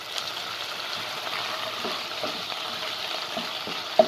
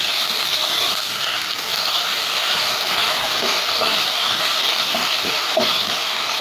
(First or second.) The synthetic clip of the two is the second